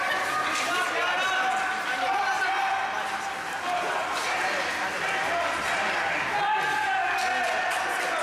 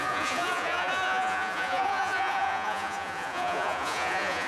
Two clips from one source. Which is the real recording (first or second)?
first